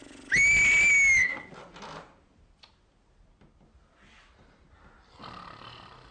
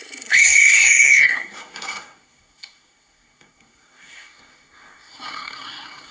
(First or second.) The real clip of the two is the first